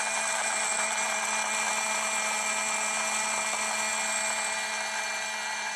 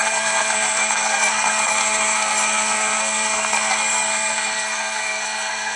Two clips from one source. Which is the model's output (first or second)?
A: second